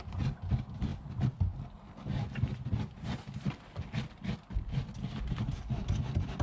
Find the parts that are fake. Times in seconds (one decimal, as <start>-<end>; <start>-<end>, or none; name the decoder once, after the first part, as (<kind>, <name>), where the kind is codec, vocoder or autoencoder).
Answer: none